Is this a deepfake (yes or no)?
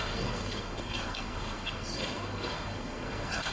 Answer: yes